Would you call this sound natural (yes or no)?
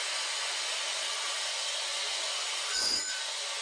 no